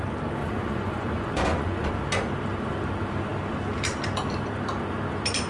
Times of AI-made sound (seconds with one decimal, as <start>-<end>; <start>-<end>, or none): 0.4-1.9